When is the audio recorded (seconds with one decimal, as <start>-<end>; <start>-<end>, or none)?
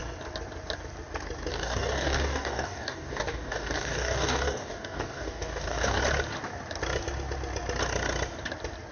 0.0-1.5; 6.0-8.9